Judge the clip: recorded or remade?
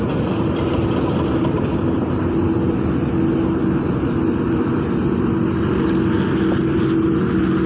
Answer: recorded